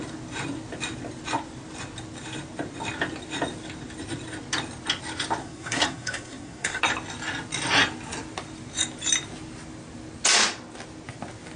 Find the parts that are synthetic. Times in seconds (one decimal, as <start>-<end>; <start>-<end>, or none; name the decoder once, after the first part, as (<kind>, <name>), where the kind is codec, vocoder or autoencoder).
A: 5.4-6.8 (codec, SNAC)